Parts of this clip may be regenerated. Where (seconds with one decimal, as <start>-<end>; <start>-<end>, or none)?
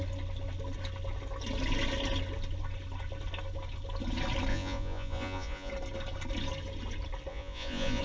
4.5-5.7; 7.3-8.0